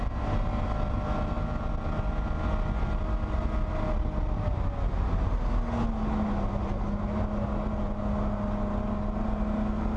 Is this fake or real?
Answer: real